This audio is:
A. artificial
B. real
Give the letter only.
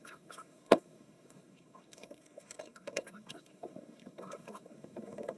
A